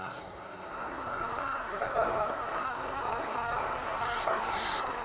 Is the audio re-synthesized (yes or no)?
yes